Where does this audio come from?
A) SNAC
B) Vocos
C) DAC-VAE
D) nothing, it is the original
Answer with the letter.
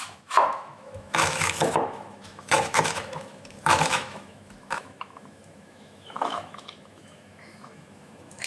C